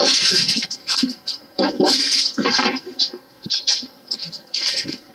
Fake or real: fake